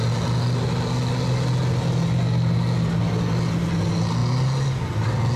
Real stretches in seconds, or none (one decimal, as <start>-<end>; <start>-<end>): 0.0-5.4